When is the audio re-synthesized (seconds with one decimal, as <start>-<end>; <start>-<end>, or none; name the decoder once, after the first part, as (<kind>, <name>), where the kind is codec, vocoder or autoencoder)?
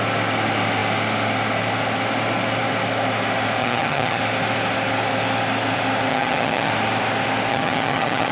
3.6-4.2 (vocoder, HiFi-GAN); 6.1-6.7; 7.5-8.3